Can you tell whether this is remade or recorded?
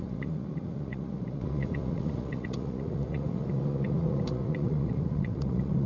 remade